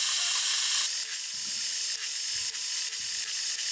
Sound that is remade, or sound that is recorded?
recorded